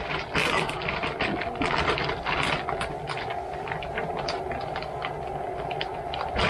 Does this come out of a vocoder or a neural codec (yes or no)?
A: no